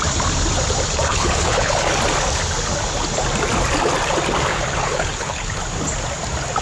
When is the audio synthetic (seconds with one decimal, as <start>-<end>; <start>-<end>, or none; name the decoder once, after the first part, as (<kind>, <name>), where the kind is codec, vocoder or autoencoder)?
1.1-1.9 (codec, HILCodec); 4.5-5.6